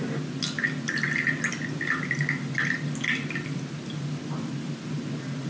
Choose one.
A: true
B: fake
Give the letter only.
A